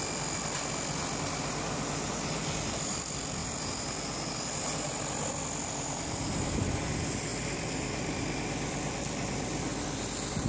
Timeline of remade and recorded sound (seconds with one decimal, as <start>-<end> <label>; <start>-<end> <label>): 0.0-10.5 recorded